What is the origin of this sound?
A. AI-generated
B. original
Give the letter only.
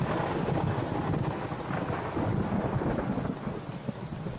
B